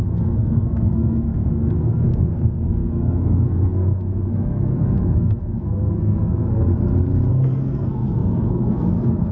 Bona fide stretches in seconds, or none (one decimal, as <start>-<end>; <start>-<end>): 6.7-7.3